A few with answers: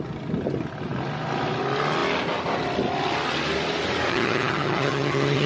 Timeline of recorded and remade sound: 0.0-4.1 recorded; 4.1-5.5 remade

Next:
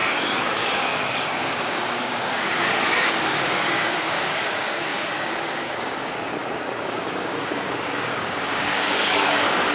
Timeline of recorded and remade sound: 0.0-9.7 remade